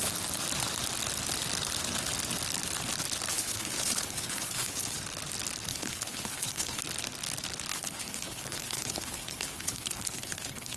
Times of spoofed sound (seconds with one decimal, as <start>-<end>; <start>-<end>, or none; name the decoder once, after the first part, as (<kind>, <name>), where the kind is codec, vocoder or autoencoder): 3.3-5.0 (codec, HILCodec); 5.7-6.8; 7.7-10.8